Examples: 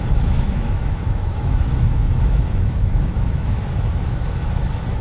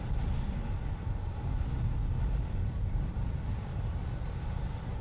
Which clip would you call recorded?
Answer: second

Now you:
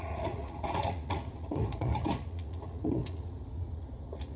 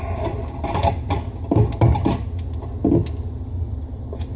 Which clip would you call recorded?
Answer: second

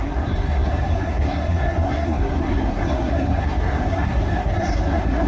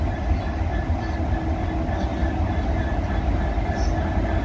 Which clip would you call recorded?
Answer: second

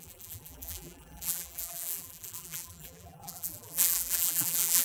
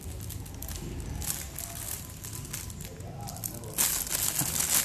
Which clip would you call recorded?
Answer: second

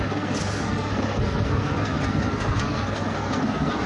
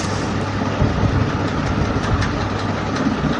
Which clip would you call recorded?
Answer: second